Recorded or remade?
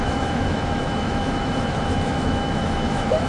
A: remade